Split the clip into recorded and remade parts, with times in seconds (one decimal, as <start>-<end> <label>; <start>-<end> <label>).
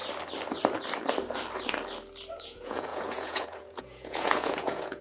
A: 0.0-2.3 recorded; 2.3-5.0 remade